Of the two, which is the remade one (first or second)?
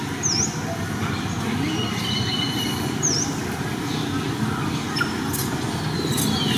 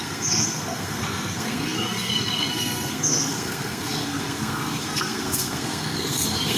second